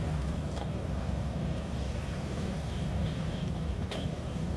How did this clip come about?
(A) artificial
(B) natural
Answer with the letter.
A